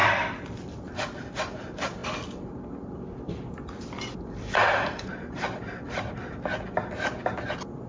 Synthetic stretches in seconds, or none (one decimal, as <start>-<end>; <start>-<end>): 0.0-1.6; 2.0-6.3

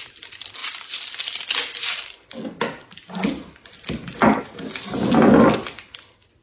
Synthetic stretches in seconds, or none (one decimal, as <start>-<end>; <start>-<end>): none

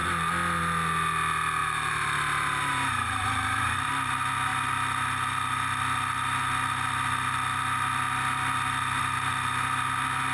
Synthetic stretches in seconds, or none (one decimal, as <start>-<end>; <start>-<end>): 1.6-3.9

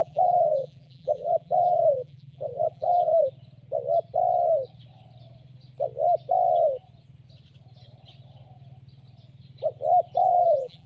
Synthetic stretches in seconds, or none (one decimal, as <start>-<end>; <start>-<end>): 0.0-3.3; 10.2-10.9

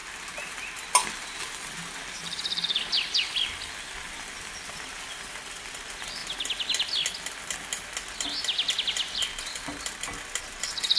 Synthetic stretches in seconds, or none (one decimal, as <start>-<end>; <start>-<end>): 0.0-6.2; 10.4-11.0

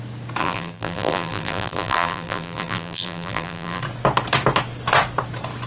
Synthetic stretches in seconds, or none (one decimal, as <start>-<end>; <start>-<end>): 0.4-3.8